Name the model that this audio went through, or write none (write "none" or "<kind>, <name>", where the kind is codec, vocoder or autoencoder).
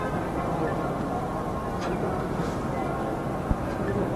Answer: none